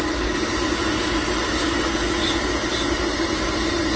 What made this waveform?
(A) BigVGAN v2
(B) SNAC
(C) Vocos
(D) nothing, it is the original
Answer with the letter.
D